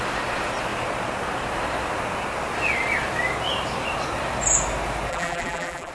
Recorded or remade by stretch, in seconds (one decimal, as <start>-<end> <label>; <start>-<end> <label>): 0.0-5.1 recorded; 5.1-5.9 remade